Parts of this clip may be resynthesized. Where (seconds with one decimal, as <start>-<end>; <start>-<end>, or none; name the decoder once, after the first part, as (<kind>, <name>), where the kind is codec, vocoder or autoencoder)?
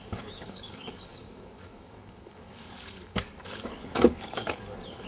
0.0-5.1 (codec, DAC)